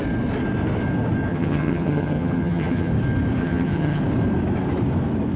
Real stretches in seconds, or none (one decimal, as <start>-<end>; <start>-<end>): 0.0-1.3; 2.9-3.4; 4.0-5.4